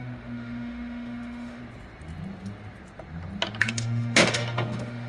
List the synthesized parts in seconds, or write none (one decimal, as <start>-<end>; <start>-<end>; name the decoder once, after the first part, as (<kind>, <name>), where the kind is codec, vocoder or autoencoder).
0.0-1.6 (autoencoder, DAC-VAE); 3.6-5.1